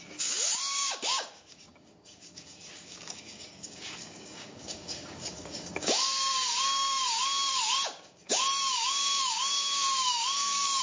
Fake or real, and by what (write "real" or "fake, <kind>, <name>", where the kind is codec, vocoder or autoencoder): fake, codec, DAC